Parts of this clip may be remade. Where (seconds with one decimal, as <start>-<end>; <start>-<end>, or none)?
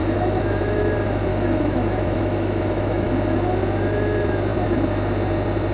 0.0-0.8; 1.3-3.1